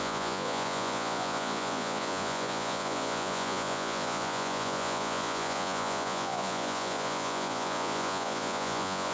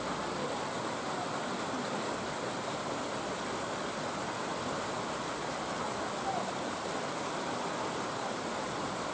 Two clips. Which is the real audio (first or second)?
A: second